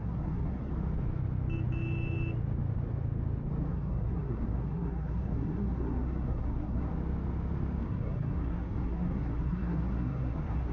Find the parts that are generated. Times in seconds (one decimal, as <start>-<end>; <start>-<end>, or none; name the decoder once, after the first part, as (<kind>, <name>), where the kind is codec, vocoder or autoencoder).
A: 0.0-0.7 (codec, SNAC); 3.7-6.9; 7.8-10.7